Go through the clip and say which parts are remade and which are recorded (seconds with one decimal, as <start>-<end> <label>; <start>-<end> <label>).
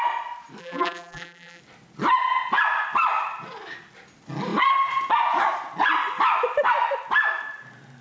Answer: 0.0-0.6 recorded; 0.6-1.6 remade; 1.6-8.0 recorded